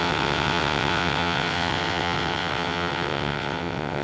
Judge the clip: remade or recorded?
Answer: remade